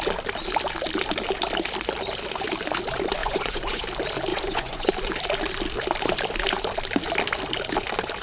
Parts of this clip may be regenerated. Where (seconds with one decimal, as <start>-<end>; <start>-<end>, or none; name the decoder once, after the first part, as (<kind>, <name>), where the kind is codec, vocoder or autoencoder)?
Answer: 3.2-3.8 (vocoder, Vocos); 4.3-4.9